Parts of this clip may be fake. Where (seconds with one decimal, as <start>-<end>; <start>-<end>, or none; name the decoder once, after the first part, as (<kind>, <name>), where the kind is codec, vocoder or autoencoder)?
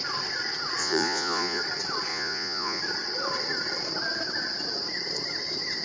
0.8-1.6 (vocoder, Vocos); 2.1-2.8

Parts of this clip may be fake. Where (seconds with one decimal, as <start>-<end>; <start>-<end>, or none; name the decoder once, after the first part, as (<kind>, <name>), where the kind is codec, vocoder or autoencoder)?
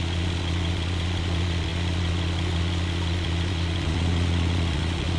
0.0-5.2 (vocoder, Vocos)